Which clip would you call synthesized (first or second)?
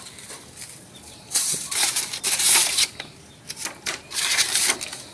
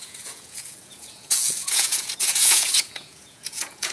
second